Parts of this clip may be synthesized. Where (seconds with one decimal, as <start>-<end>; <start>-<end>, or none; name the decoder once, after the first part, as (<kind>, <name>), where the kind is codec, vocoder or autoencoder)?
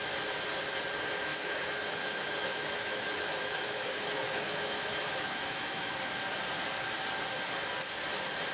1.3-6.0 (autoencoder, DAC-VAE)